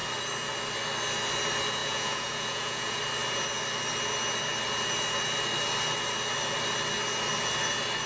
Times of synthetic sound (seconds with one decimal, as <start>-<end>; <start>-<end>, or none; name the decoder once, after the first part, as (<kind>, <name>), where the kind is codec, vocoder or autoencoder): 1.8-3.0 (vocoder, Vocos)